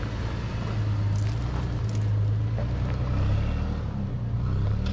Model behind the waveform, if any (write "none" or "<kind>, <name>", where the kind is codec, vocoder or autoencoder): none